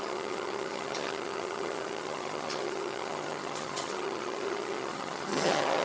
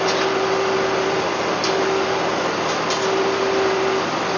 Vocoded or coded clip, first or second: first